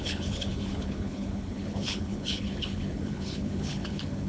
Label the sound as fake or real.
fake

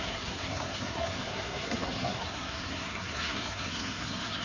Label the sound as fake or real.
fake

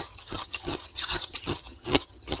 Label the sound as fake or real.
fake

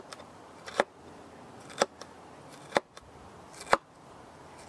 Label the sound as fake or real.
real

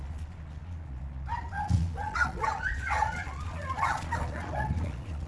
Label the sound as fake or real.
fake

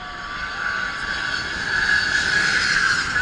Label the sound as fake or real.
real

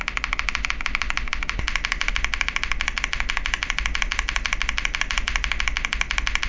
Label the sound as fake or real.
real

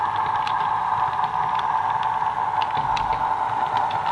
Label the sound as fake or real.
real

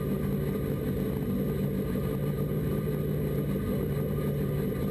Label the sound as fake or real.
real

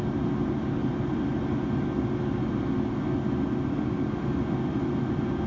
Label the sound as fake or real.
real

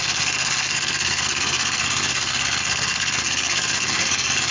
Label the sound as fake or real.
fake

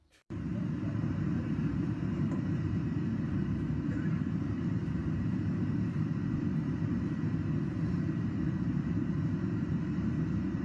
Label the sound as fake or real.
fake